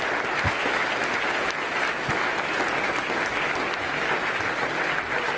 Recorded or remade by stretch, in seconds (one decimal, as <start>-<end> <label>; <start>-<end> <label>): 0.0-5.4 recorded